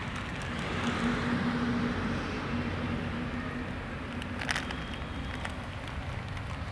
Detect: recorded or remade recorded